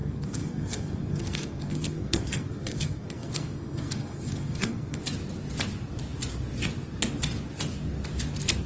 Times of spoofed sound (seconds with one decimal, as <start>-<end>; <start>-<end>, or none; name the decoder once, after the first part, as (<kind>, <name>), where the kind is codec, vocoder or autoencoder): 0.0-5.0 (codec, SNAC)